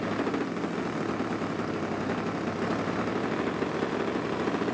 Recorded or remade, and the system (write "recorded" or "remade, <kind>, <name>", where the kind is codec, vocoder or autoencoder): recorded